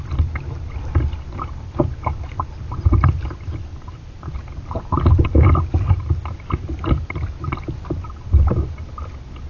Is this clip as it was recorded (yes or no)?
yes